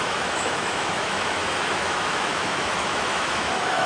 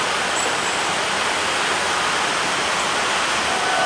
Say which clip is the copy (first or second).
first